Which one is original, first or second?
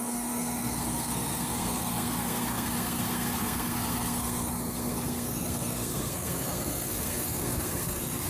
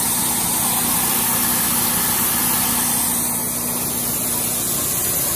second